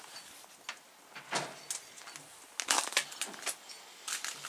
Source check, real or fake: real